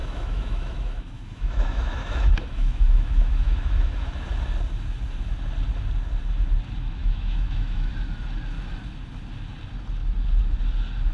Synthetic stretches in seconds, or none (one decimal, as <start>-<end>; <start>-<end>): 0.0-4.1; 7.0-7.9